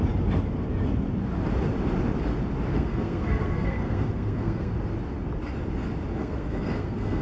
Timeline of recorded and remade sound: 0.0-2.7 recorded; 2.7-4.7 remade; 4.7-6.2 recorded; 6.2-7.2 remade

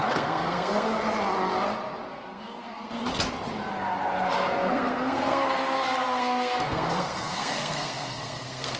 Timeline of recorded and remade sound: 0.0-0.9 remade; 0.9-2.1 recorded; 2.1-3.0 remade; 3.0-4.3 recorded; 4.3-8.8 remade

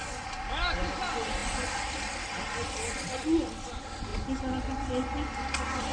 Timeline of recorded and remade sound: 0.0-5.9 recorded

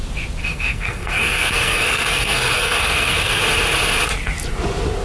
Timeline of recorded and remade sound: 0.0-0.4 recorded; 0.4-3.4 remade; 3.4-5.0 recorded